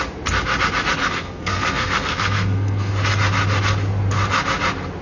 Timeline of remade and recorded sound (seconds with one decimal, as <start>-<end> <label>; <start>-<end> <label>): 0.0-1.0 recorded; 1.0-2.9 remade; 2.9-5.0 recorded